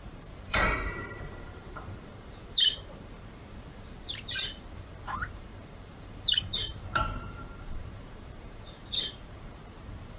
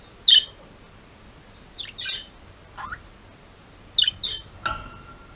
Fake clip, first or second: first